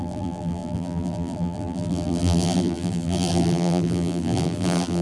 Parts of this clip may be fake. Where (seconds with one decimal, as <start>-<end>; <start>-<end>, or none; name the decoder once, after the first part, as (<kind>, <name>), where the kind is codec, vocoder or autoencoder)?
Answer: 0.0-5.0 (vocoder, BigVGAN v2)